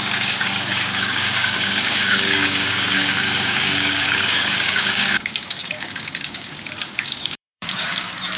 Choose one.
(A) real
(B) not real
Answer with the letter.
B